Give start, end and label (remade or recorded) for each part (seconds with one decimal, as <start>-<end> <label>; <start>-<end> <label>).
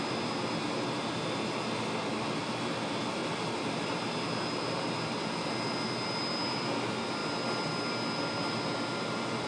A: 0.0-9.5 recorded